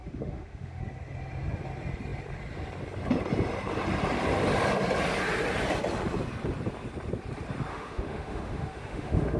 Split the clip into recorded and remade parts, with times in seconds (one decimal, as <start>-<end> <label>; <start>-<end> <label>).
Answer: 0.0-0.8 remade; 0.8-7.7 recorded; 7.7-9.4 remade